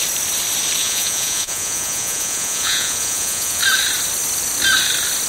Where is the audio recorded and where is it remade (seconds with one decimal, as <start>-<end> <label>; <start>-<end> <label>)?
0.0-0.8 recorded; 0.8-3.6 remade; 3.6-5.3 recorded